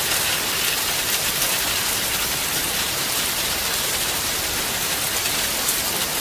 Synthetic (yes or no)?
no